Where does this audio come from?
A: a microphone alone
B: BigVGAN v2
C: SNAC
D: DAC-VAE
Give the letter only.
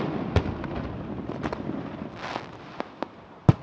A